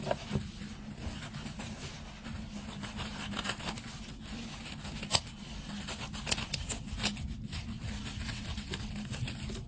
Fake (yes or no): no